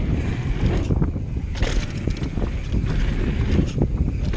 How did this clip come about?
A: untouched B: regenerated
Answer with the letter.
A